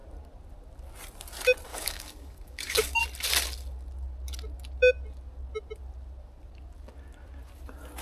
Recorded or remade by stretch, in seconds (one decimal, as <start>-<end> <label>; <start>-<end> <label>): 0.0-1.7 recorded; 1.7-3.0 remade; 3.0-8.0 recorded